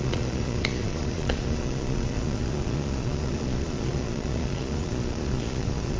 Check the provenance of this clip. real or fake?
fake